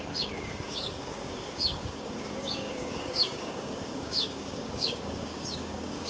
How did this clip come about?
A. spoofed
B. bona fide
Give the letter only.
A